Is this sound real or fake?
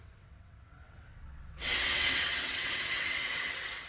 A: fake